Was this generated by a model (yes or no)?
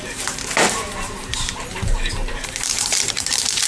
yes